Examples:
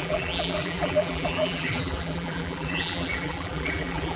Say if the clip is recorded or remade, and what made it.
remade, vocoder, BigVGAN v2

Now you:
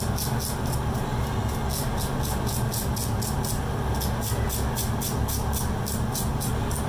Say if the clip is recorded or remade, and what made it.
recorded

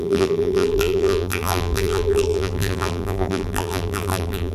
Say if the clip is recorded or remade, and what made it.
remade, vocoder, BigVGAN v2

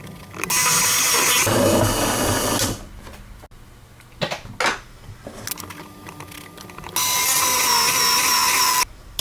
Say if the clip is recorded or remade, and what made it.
recorded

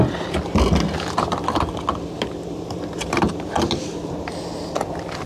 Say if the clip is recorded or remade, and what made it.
recorded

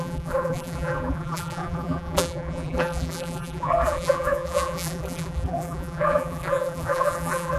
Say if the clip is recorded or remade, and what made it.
remade, vocoder, BigVGAN v2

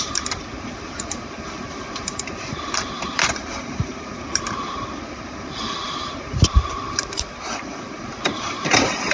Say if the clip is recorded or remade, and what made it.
remade, vocoder, BigVGAN v2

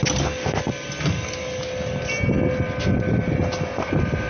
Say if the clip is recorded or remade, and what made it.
recorded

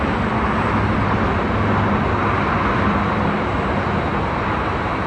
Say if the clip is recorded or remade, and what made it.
recorded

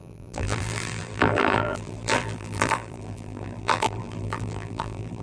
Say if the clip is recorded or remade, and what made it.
remade, vocoder, BigVGAN v2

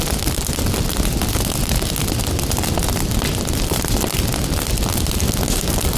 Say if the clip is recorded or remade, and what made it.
remade, vocoder, BigVGAN v2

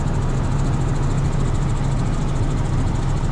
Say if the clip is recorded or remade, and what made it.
recorded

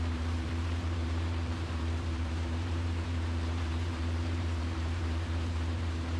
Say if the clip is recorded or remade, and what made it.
remade, vocoder, BigVGAN v2